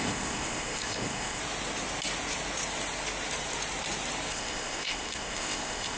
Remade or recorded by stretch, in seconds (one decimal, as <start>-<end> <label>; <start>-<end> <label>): 0.0-1.4 remade; 1.4-4.3 recorded; 4.3-6.0 remade